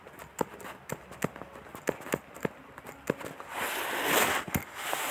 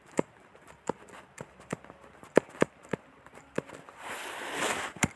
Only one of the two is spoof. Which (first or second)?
second